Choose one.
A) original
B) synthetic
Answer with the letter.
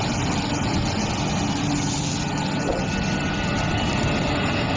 A